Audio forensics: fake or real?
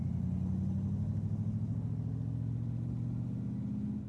real